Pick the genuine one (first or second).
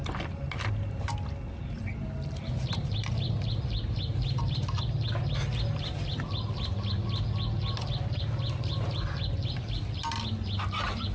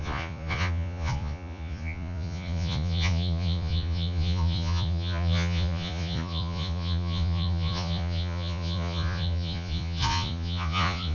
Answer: first